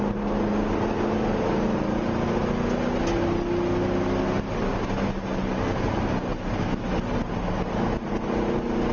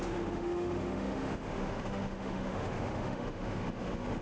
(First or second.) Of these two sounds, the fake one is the second